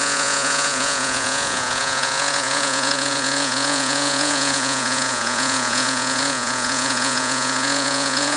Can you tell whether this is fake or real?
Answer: fake